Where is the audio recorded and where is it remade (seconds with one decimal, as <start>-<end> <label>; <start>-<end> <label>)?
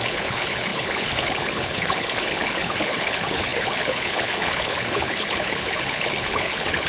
0.0-6.9 remade